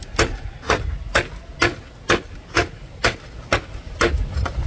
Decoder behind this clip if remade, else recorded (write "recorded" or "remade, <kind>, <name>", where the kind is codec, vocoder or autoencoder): recorded